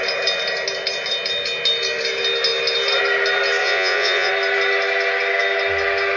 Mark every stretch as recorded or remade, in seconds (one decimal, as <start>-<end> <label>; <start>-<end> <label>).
0.0-3.6 recorded; 3.6-4.3 remade; 4.3-6.2 recorded